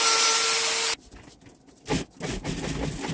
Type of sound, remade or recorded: recorded